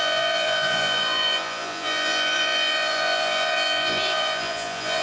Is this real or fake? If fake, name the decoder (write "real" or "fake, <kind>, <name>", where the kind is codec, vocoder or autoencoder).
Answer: fake, vocoder, Vocos